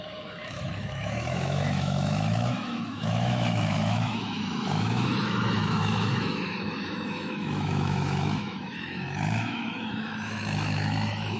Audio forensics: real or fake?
fake